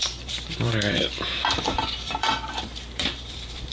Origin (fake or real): fake